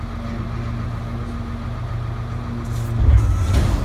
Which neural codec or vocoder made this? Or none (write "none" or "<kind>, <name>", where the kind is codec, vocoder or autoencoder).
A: none